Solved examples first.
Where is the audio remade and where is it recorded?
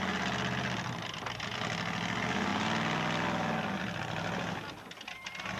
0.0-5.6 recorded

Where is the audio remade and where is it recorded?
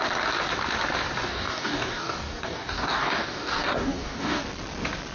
0.0-1.3 recorded; 1.3-4.4 remade; 4.4-5.1 recorded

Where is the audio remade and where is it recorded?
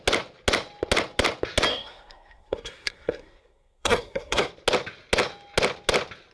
0.0-1.7 recorded; 1.7-4.5 remade; 4.5-6.3 recorded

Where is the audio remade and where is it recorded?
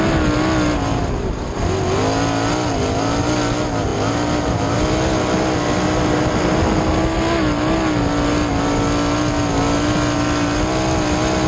0.0-11.5 recorded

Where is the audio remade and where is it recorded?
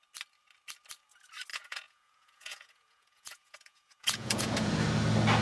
0.0-1.5 recorded; 1.5-4.7 remade; 4.7-5.4 recorded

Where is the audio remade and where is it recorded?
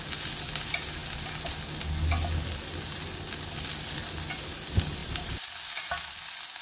0.0-5.0 recorded; 5.0-5.5 remade; 5.5-6.6 recorded